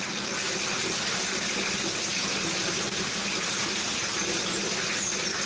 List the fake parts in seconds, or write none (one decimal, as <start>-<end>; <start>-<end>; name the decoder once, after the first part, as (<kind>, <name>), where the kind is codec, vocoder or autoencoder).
none